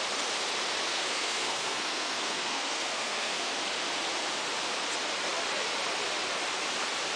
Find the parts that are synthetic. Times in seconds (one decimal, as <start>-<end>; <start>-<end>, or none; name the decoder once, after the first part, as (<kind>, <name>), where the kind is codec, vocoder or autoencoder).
0.9-3.5 (codec, SNAC)